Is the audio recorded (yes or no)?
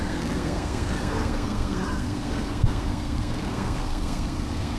no